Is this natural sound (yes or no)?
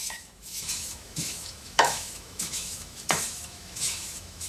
no